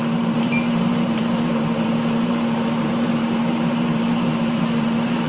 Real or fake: fake